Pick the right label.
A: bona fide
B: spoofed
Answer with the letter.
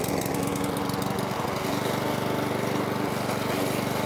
A